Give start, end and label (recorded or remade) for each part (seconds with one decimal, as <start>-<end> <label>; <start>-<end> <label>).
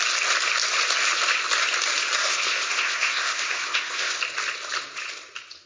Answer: 0.0-2.2 recorded; 2.2-4.2 remade; 4.2-5.7 recorded